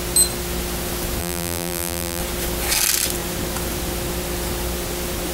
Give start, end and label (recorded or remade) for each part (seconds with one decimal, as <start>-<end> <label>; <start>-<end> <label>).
0.0-1.2 recorded; 1.2-2.2 remade; 2.2-5.3 recorded